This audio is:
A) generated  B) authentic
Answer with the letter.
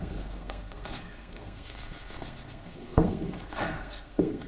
A